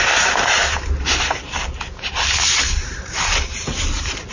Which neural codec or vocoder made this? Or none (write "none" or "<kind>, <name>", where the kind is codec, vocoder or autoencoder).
vocoder, BigVGAN v2